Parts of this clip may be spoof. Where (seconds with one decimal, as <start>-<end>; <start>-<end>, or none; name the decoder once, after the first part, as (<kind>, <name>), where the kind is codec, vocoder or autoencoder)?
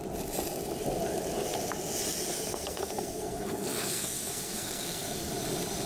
2.3-5.3 (codec, SNAC)